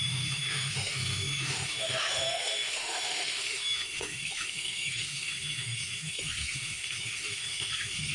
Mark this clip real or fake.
fake